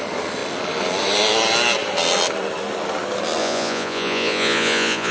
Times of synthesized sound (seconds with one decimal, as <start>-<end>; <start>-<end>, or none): 3.4-5.1